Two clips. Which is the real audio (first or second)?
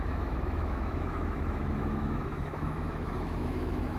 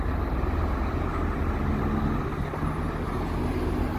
second